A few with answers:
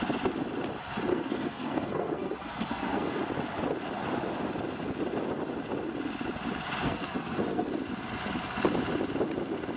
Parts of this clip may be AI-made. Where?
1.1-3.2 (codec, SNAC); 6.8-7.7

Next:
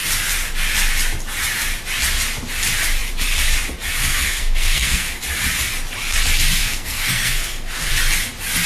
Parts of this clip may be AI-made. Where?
4.0-5.2 (codec, SNAC); 6.6-7.9